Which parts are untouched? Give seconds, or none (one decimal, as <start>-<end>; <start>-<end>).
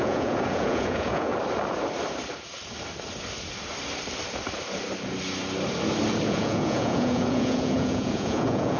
1.3-6.3